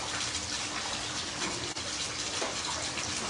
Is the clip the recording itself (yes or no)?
yes